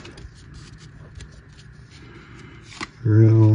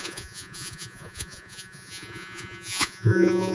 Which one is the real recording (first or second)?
first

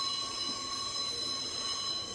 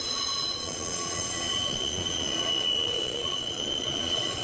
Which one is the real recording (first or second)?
first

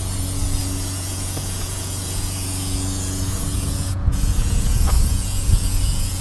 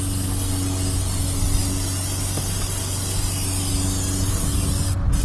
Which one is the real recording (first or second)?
second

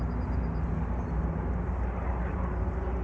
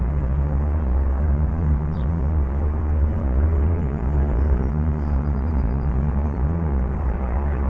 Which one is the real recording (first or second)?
first